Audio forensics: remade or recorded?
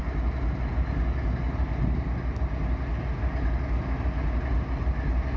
recorded